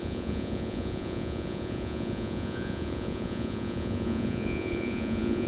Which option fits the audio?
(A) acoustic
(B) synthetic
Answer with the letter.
B